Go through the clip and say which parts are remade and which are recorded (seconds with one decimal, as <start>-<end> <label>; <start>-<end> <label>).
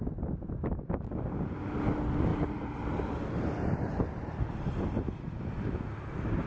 0.0-2.3 recorded; 2.3-5.3 remade; 5.3-6.5 recorded